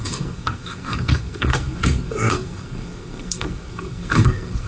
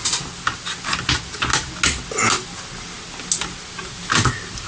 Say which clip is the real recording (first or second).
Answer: second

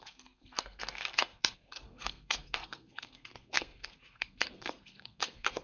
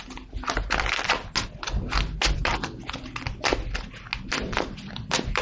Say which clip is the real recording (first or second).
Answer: second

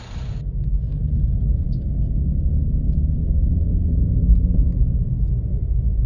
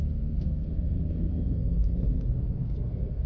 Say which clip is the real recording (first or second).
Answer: first